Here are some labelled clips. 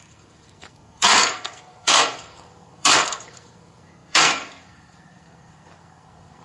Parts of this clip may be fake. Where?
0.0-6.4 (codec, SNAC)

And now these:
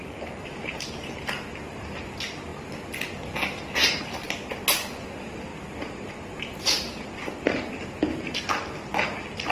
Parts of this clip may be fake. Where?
none